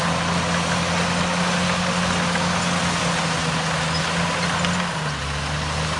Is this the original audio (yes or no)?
yes